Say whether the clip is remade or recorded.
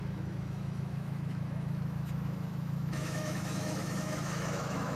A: remade